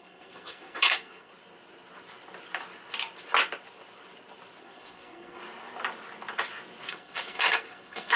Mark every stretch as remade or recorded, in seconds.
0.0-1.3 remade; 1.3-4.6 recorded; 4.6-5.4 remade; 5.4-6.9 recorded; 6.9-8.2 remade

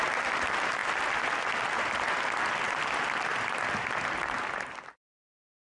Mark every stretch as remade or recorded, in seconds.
0.0-5.7 recorded

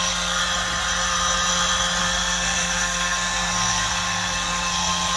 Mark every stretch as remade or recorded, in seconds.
0.0-0.4 remade; 0.4-2.0 recorded; 2.0-5.2 remade

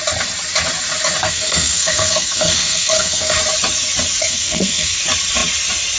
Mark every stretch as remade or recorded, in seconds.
0.0-1.2 recorded; 1.2-3.4 remade; 3.4-4.2 recorded; 4.2-5.0 remade; 5.0-6.0 recorded

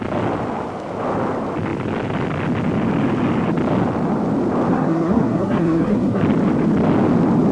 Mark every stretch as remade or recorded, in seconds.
0.0-4.7 recorded; 4.7-6.2 remade; 6.2-7.5 recorded

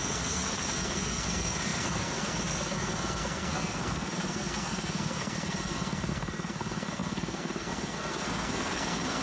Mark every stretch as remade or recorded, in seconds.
0.0-9.2 remade

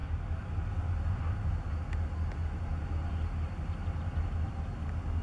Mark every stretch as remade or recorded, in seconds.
0.0-5.2 recorded